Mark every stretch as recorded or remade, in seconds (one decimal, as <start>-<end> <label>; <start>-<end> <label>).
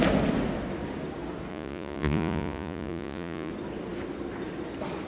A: 0.0-1.5 recorded; 1.5-3.5 remade; 3.5-5.1 recorded